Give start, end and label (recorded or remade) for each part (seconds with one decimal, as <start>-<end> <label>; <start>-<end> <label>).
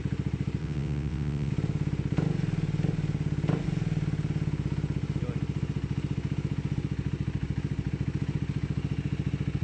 0.0-0.6 recorded; 0.6-1.5 remade; 1.5-9.6 recorded